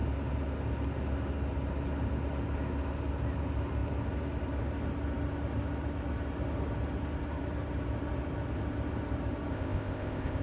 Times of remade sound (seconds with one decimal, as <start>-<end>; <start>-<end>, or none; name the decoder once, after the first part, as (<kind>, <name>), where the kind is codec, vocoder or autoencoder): 9.5-10.4 (codec, ZipCodec)